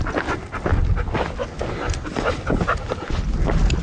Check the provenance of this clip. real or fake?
real